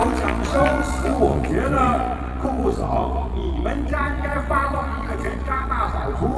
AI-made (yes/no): yes